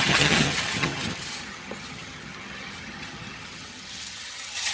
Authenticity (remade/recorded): remade